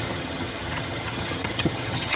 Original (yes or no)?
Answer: no